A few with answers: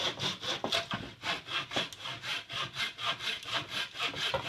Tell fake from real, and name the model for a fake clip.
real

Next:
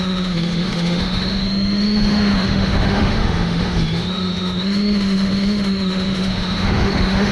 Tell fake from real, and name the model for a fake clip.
fake, autoencoder, DAC-VAE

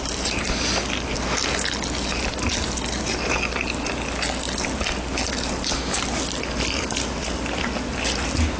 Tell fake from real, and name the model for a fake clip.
real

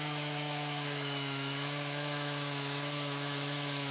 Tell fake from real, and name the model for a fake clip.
fake, autoencoder, DAC-VAE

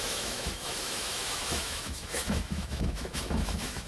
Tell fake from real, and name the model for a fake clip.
fake, autoencoder, DAC-VAE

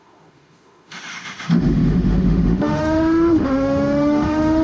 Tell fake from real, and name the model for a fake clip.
fake, autoencoder, DAC-VAE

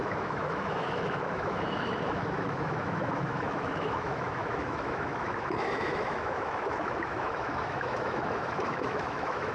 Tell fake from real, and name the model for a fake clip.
fake, autoencoder, DAC-VAE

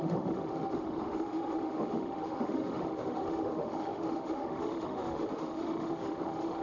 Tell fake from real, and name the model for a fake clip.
fake, autoencoder, DAC-VAE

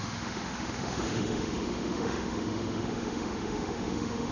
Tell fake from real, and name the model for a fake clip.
fake, autoencoder, DAC-VAE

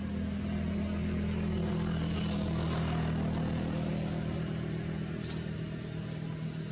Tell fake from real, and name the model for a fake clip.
real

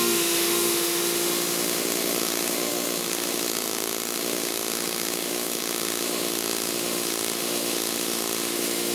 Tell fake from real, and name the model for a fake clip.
fake, autoencoder, DAC-VAE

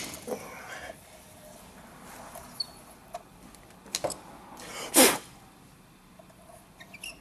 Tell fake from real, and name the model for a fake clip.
real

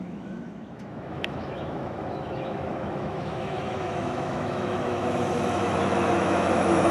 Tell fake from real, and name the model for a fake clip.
fake, autoencoder, DAC-VAE